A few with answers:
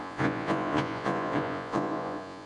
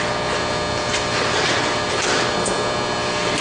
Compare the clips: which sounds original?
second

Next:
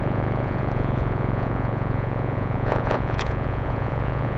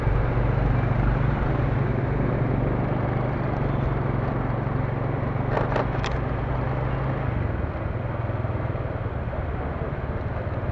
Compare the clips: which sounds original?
second